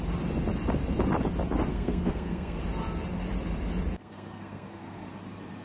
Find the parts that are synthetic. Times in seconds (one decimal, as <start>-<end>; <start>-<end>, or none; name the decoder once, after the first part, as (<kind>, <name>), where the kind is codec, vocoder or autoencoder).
1.7-2.6 (codec, SNAC); 4.0-5.1